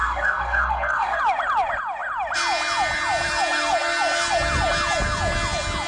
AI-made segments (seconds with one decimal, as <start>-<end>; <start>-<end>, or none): 0.0-1.2